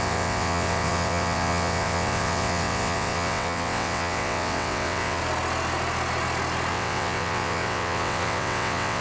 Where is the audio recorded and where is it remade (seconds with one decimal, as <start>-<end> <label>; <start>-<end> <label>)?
0.0-5.2 remade; 5.2-6.7 recorded; 6.7-9.0 remade